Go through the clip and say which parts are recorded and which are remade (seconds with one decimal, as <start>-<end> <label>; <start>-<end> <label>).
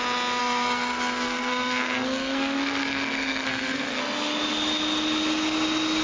0.0-0.4 recorded; 0.4-4.0 remade; 4.0-6.0 recorded